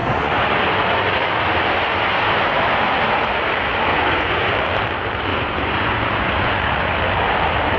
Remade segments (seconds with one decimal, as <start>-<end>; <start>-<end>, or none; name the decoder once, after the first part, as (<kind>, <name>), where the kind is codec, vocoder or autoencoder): 0.0-1.3 (vocoder, Vocos); 3.9-4.5; 5.3-6.9